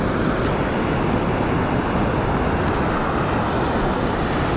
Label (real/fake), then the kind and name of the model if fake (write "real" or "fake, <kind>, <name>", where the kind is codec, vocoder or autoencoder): real